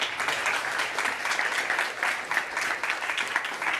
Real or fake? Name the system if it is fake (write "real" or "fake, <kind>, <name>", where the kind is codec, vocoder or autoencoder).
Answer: real